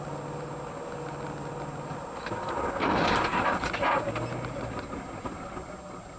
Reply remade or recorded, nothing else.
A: recorded